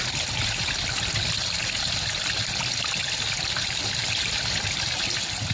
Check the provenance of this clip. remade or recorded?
recorded